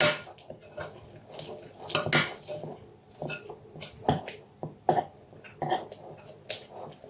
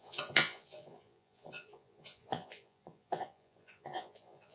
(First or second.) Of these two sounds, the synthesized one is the second